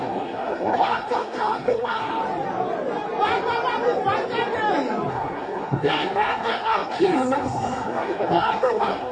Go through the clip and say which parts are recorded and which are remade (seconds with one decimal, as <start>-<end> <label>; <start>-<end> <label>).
0.0-2.1 remade; 2.1-5.1 recorded; 5.1-9.1 remade